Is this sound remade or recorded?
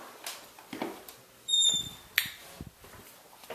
recorded